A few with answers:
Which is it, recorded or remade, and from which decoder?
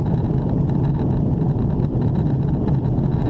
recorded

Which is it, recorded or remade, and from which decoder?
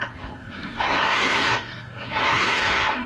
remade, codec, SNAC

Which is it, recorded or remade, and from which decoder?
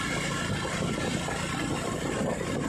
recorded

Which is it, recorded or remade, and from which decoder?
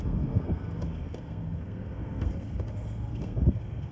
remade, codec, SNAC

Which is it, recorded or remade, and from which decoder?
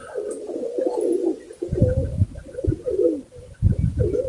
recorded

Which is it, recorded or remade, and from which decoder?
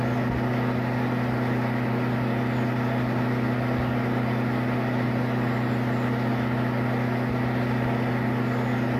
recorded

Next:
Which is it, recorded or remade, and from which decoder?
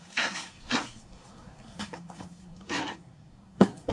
remade, codec, SNAC